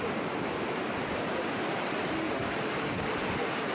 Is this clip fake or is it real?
real